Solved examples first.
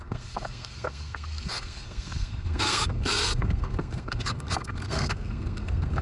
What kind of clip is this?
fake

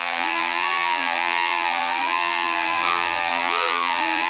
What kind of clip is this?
fake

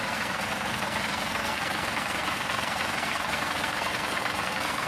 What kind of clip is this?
fake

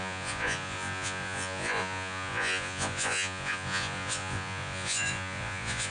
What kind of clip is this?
fake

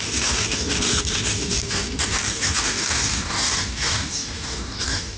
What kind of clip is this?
fake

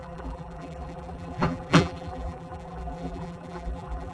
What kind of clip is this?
fake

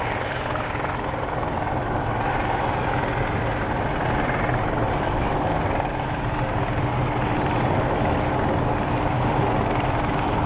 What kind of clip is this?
real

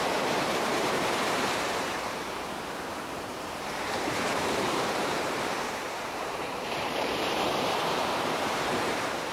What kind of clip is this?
fake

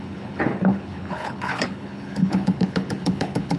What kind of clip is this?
fake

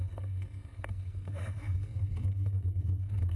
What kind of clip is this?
fake